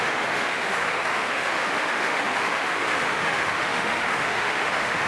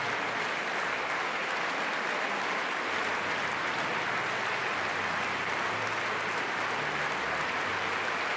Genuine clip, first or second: second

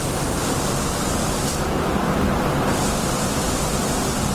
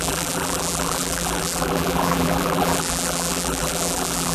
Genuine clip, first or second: first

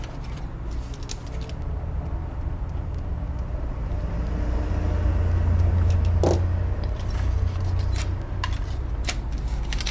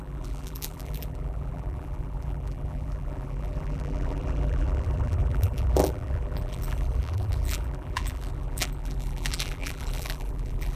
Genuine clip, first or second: first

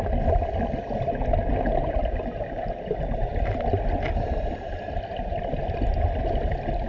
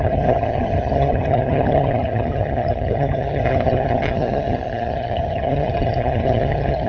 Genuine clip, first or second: first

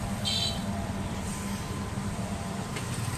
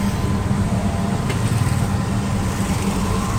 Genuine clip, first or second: second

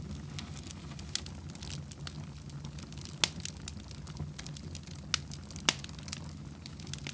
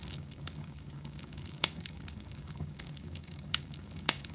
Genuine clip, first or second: first